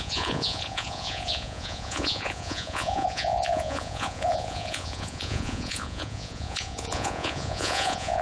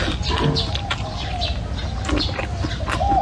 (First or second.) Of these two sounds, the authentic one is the second